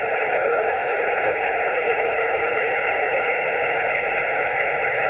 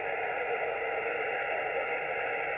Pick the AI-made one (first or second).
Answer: first